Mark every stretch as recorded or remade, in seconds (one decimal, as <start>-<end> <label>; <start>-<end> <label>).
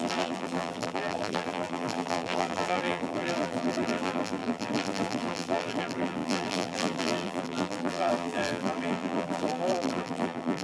0.0-10.6 remade